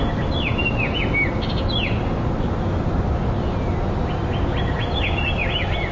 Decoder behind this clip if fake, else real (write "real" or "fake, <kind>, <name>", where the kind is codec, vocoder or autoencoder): real